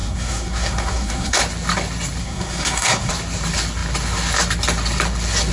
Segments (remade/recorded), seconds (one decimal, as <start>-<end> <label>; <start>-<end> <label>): 0.0-1.4 remade; 1.4-2.2 recorded; 2.2-3.1 remade; 3.1-5.5 recorded